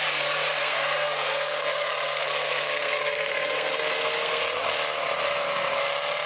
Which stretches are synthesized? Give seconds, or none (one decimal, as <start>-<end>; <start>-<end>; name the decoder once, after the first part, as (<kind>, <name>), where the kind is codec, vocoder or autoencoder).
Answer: 0.6-4.4 (codec, SNAC)